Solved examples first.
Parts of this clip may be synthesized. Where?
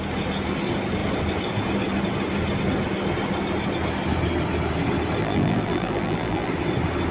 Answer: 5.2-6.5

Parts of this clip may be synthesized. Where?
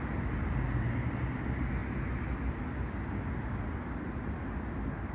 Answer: none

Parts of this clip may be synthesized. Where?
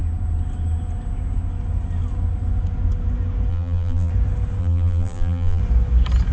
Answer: 3.5-4.1; 4.6-5.6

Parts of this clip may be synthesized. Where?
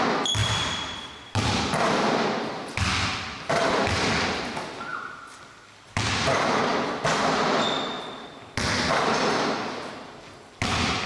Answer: 0.4-2.5; 4.9-5.5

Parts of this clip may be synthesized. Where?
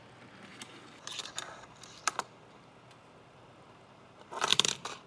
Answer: 0.0-0.5; 2.6-5.1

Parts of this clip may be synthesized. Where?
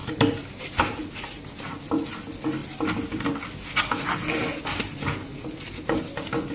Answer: 0.0-1.1; 5.3-6.0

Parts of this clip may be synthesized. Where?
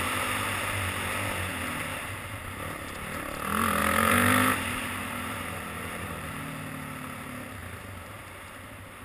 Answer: 3.8-6.4